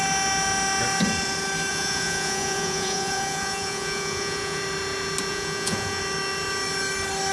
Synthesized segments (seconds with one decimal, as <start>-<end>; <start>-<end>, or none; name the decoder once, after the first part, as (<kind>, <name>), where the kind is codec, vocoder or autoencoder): 1.7-4.6 (vocoder, Vocos); 5.3-6.0